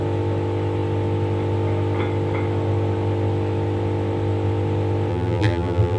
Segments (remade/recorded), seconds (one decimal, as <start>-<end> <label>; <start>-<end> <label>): 0.0-5.1 recorded; 5.1-6.0 remade